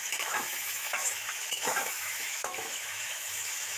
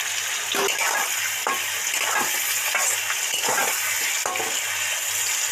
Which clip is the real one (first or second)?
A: second